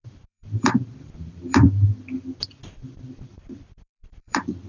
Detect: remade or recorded remade